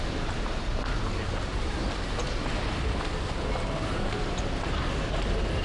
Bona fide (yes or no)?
yes